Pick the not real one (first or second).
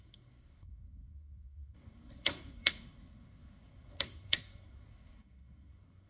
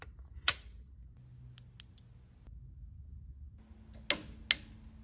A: first